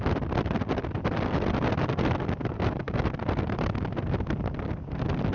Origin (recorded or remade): recorded